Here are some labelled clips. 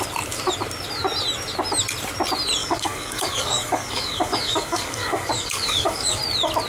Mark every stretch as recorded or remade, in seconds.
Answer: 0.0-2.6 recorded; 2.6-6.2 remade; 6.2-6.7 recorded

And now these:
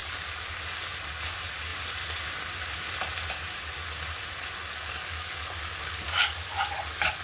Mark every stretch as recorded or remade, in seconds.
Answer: 0.0-0.6 remade; 0.6-4.6 recorded; 4.6-6.6 remade; 6.6-7.2 recorded

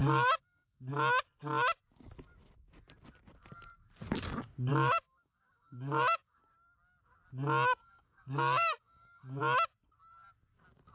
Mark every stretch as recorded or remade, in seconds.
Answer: 0.0-0.9 remade; 0.9-4.7 recorded; 4.7-6.4 remade; 6.4-7.8 recorded; 7.8-9.4 remade; 9.4-10.9 recorded

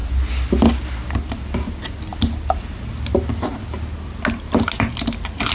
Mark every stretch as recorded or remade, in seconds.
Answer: 0.0-5.5 recorded

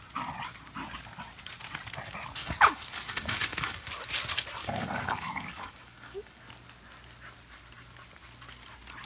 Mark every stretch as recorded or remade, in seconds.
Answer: 0.0-2.4 recorded; 2.4-3.9 remade; 3.9-4.6 recorded; 4.6-6.4 remade; 6.4-9.1 recorded

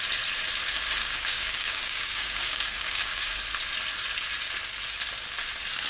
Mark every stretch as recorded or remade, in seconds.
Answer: 0.0-1.0 recorded; 1.0-3.3 remade; 3.3-5.9 recorded

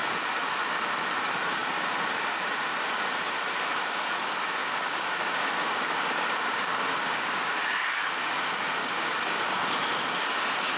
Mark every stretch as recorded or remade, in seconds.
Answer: 0.0-4.6 recorded; 4.6-8.3 remade; 8.3-8.8 recorded; 8.8-9.4 remade; 9.4-10.8 recorded